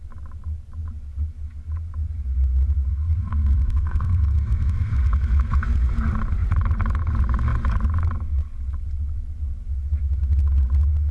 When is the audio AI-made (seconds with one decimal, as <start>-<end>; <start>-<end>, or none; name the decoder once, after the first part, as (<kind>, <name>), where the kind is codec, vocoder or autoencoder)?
2.9-5.6 (codec, SNAC)